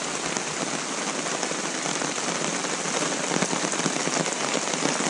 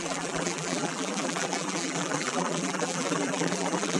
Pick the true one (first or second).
first